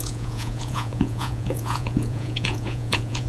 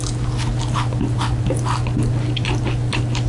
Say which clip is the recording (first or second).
second